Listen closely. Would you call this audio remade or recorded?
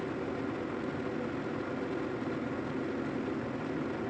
recorded